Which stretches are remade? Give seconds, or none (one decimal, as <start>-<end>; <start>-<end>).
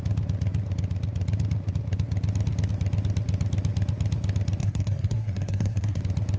4.6-6.0